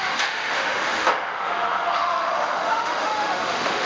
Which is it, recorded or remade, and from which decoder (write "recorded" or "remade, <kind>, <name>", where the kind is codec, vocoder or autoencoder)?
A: remade, autoencoder, DAC-VAE